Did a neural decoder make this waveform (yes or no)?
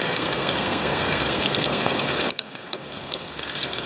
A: yes